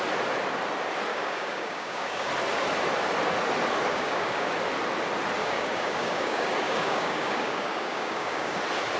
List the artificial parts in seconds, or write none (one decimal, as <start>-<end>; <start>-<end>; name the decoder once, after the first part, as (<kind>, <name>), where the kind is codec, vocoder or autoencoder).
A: 1.1-2.3 (codec, DAC); 3.9-4.5; 5.4-8.6